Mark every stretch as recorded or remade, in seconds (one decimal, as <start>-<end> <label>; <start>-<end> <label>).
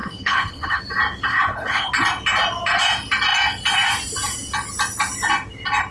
0.0-0.8 remade; 0.8-1.3 recorded; 1.3-1.9 remade; 1.9-5.9 recorded